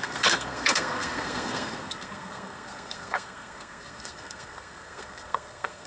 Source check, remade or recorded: remade